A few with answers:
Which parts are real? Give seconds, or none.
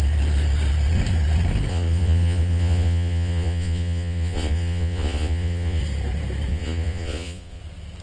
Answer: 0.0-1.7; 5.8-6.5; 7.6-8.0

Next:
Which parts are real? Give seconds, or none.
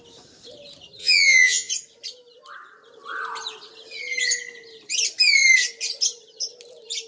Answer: 0.0-1.0; 1.7-7.1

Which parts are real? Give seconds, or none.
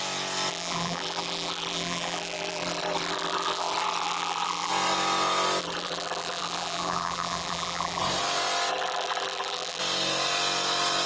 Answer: 0.0-0.5; 4.7-5.6; 8.0-8.7; 9.8-11.1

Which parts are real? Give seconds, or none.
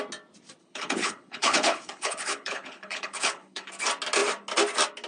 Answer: 0.0-0.6; 3.7-5.1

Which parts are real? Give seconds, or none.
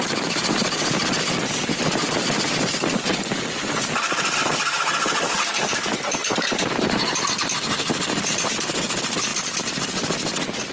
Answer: 0.0-6.2; 7.0-7.6; 8.2-10.7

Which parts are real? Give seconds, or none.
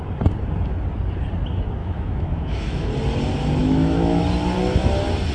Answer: 0.0-1.8; 2.9-3.6; 4.2-5.3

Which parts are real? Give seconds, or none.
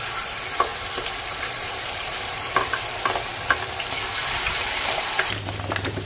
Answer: 0.7-1.4; 3.3-4.5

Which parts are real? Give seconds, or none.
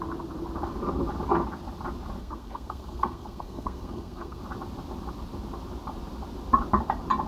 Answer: 0.0-2.2; 4.4-7.3